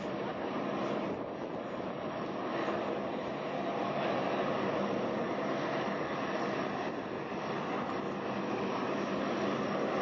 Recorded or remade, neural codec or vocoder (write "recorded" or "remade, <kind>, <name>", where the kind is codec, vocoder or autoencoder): recorded